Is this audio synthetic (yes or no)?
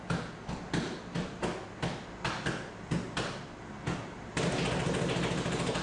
no